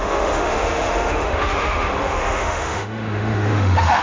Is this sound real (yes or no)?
no